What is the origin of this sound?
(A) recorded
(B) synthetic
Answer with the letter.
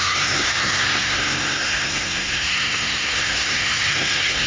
B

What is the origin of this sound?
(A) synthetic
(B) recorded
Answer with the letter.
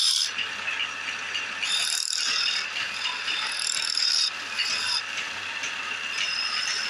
A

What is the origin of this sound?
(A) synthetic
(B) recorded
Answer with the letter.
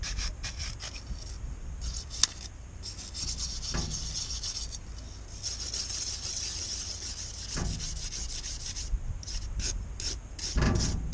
B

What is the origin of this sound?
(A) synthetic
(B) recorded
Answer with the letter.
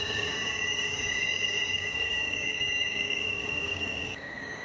A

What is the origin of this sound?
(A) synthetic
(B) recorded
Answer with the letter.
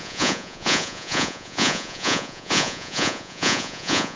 A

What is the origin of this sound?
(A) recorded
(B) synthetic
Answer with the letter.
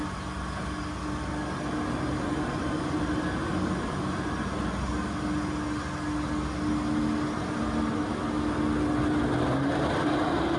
A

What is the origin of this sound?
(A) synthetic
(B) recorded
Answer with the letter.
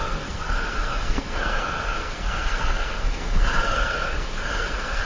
A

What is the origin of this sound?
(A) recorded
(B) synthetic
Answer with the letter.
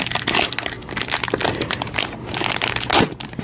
A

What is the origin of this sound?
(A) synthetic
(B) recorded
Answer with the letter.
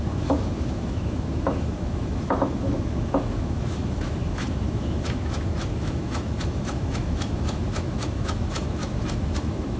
A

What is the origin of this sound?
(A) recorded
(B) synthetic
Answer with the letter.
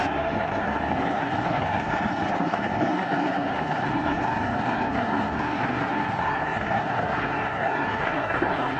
B